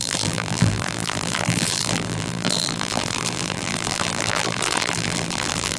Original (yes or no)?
no